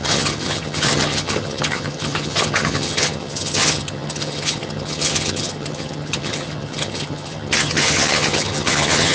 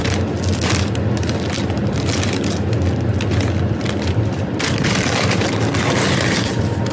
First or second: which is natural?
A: second